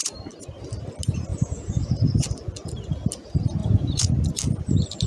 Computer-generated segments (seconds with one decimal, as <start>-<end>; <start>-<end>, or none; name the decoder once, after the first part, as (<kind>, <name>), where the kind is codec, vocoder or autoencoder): 1.3-1.9 (vocoder, Vocos); 3.6-4.1